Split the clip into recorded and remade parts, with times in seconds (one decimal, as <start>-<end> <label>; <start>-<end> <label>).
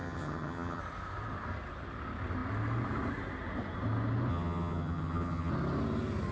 0.0-0.8 remade; 0.8-4.3 recorded; 4.3-5.5 remade; 5.5-6.3 recorded